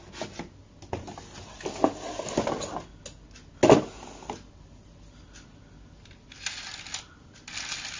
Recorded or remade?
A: recorded